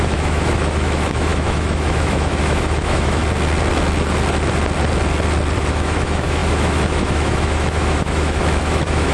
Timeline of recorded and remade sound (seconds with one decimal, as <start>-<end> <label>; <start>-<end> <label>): 0.0-3.2 remade; 3.2-5.7 recorded; 5.7-9.1 remade